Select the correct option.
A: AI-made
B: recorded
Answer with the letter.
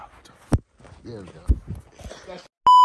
B